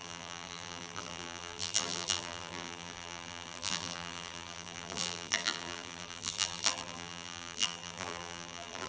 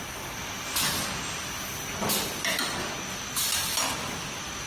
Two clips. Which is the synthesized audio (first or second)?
first